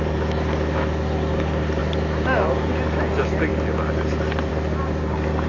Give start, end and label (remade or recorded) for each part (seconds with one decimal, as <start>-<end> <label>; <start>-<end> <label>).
0.0-5.5 recorded